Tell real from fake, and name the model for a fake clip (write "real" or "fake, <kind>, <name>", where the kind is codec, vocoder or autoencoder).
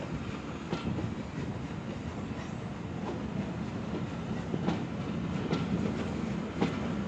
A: real